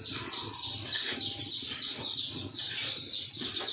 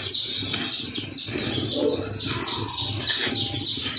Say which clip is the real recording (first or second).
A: second